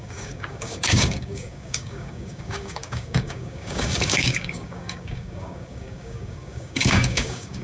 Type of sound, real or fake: fake